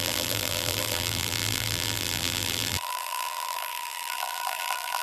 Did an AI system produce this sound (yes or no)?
yes